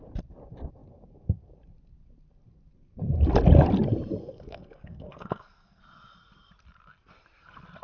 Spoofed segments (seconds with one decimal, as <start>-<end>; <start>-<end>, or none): 4.2-5.8